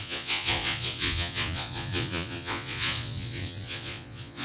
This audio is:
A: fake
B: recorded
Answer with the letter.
A